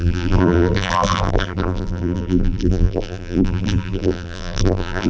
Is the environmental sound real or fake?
fake